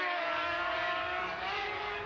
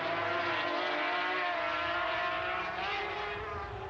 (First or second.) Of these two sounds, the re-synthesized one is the first